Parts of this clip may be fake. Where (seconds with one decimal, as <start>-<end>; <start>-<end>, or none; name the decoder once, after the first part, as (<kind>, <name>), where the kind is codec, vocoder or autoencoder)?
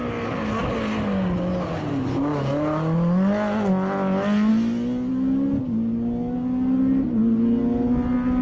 none